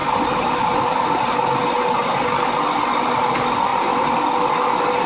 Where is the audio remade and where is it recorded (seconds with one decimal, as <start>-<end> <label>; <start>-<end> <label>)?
0.0-1.2 remade; 1.2-3.7 recorded; 3.7-4.3 remade; 4.3-5.1 recorded